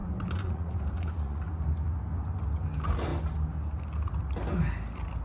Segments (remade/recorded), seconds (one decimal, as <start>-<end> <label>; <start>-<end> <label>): 0.0-1.4 remade; 1.4-5.2 recorded